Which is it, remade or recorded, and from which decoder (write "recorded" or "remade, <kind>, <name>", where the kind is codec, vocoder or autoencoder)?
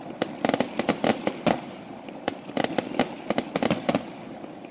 recorded